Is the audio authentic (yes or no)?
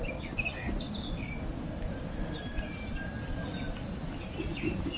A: yes